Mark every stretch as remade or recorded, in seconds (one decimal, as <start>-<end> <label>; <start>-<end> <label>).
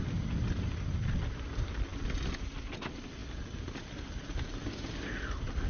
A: 0.0-5.7 recorded